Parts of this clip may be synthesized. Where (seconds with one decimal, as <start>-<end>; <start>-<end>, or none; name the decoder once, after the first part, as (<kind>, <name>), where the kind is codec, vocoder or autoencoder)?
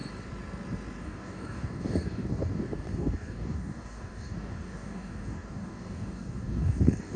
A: 1.0-7.2 (codec, DAC)